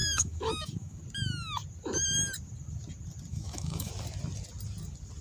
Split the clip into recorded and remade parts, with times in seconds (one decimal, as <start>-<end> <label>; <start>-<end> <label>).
0.0-1.0 remade; 1.0-3.3 recorded; 3.3-3.9 remade; 3.9-5.2 recorded